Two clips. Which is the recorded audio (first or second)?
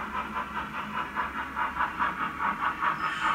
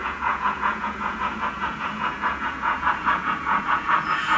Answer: first